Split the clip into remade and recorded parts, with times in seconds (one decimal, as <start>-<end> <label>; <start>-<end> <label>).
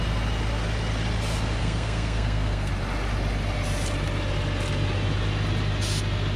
0.0-1.6 recorded; 1.6-2.7 remade; 2.7-6.4 recorded